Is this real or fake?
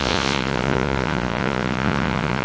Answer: fake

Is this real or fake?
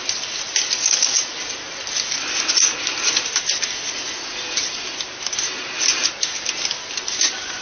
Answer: real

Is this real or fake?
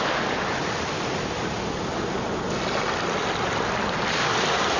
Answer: real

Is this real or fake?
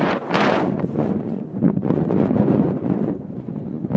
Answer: fake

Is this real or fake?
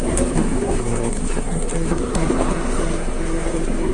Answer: fake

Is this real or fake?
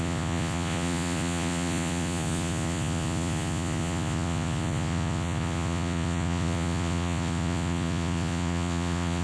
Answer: fake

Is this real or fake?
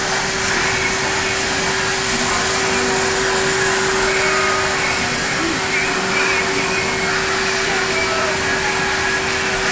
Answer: real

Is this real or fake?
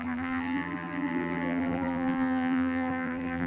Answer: fake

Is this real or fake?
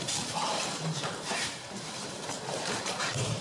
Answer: fake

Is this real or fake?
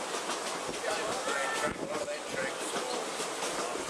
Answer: real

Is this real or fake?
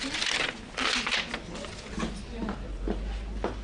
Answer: real